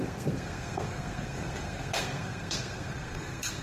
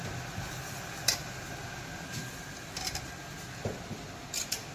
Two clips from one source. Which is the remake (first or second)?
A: first